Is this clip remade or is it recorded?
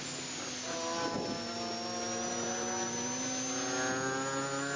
recorded